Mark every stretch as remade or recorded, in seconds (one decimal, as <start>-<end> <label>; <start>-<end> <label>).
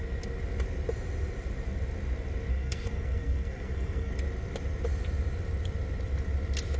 0.0-2.5 recorded; 2.5-4.1 remade; 4.1-6.8 recorded